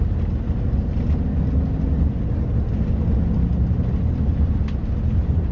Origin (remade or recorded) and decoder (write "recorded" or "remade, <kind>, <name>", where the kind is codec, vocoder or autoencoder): recorded